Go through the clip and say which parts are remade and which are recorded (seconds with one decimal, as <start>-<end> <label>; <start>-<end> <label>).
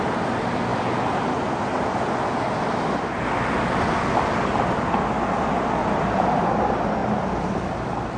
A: 0.0-5.8 recorded; 5.8-6.4 remade; 6.4-7.0 recorded; 7.0-8.2 remade